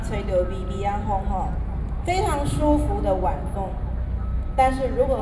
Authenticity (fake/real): real